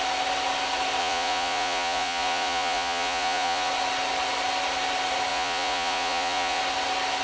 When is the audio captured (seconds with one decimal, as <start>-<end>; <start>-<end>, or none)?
0.0-1.0; 3.7-5.3; 6.6-7.2